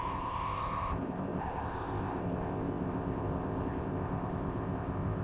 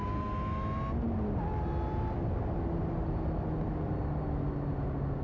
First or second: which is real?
second